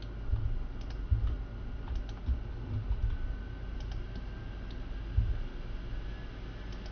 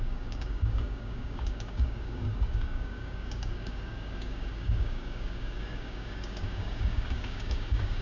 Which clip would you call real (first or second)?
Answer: first